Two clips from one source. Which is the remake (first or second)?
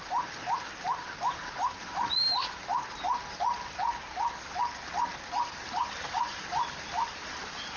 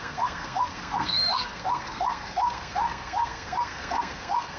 second